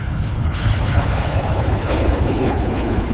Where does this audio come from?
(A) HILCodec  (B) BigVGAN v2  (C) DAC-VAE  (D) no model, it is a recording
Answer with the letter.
A